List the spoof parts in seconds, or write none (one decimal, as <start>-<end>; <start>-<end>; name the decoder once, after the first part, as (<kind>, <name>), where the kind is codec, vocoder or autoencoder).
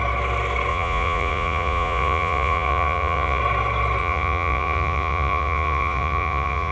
0.7-3.4 (vocoder, Vocos); 4.0-6.7